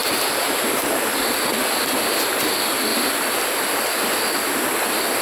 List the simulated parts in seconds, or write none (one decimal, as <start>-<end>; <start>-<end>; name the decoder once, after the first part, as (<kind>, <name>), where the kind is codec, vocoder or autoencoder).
0.0-1.0 (vocoder, BigVGAN v2); 2.9-3.5